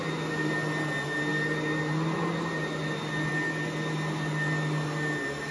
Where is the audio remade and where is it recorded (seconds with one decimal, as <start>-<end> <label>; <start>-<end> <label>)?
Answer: 0.0-5.5 recorded